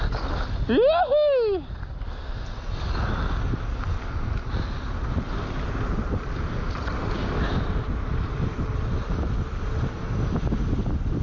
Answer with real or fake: real